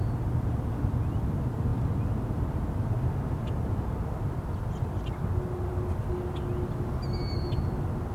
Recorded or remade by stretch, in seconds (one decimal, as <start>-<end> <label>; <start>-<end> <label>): 0.0-8.1 recorded